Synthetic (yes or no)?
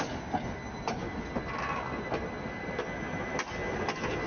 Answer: no